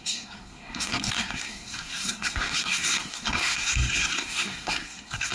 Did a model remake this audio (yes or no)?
yes